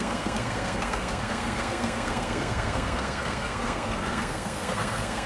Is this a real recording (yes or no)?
no